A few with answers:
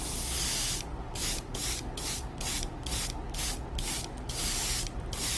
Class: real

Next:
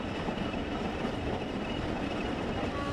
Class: real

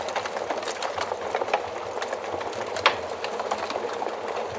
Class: fake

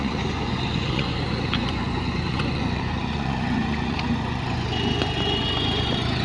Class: fake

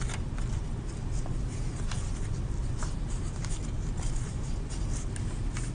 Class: real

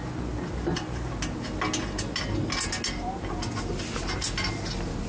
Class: real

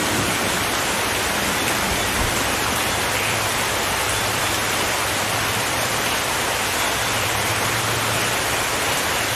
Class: fake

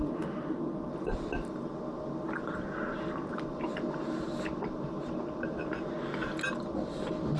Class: real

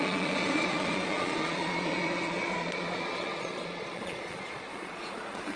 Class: fake